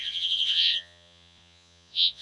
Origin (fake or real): fake